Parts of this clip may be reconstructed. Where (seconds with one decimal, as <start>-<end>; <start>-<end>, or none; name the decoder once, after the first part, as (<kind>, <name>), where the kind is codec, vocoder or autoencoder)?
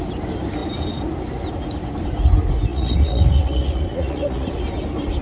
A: 2.7-4.5 (vocoder, Vocos)